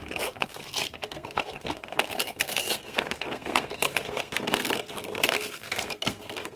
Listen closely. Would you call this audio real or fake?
fake